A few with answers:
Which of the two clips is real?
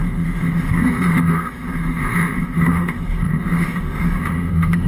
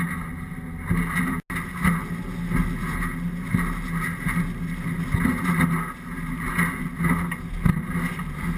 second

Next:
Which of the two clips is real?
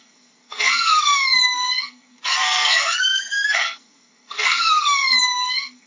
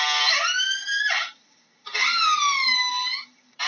second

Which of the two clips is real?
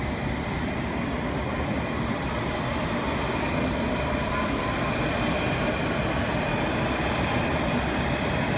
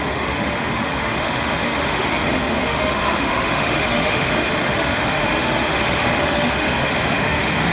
first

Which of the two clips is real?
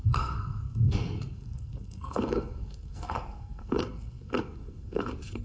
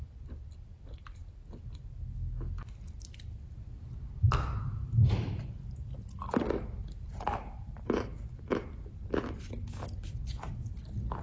second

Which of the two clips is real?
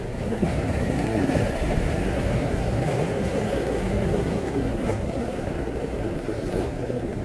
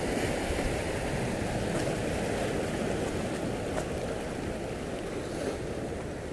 second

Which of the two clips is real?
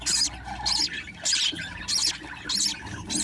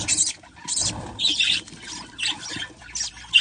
first